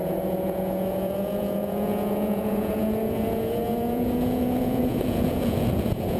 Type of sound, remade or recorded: remade